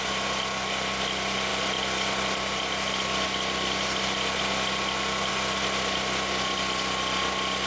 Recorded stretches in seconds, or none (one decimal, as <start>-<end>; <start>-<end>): 0.0-7.7